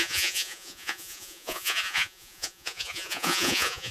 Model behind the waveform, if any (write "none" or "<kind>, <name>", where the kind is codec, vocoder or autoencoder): vocoder, Vocos